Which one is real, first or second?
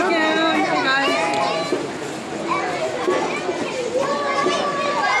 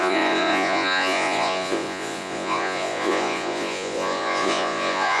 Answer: first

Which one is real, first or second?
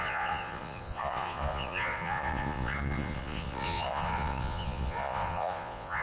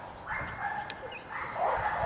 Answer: second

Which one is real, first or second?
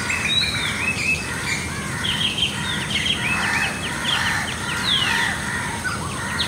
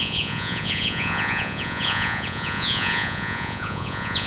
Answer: first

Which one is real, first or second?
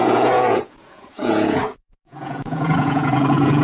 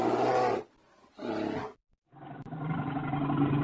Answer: second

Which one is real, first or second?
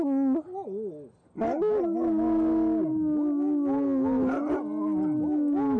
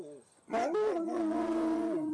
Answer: first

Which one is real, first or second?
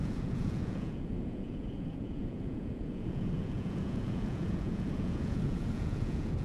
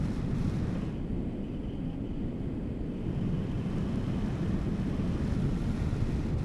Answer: second